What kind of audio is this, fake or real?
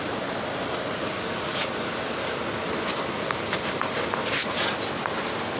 real